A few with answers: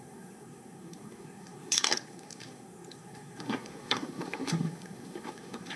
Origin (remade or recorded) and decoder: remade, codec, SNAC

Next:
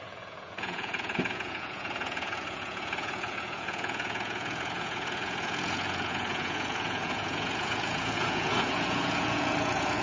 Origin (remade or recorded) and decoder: remade, vocoder, Vocos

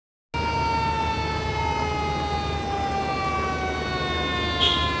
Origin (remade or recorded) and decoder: recorded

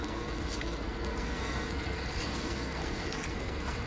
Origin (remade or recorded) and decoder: remade, codec, SNAC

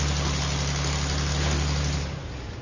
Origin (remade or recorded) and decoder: recorded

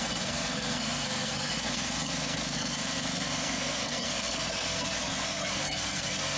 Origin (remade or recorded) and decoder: remade, codec, SNAC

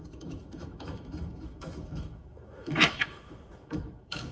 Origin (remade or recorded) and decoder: remade, autoencoder, DAC-VAE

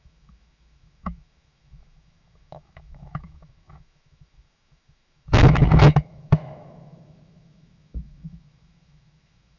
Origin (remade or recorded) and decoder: remade, autoencoder, DAC-VAE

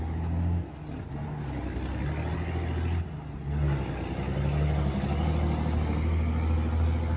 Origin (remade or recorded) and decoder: recorded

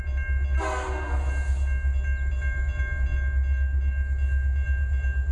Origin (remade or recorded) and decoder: recorded